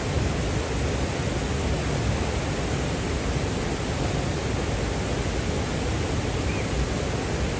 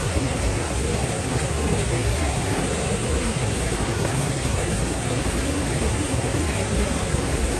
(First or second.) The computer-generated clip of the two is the second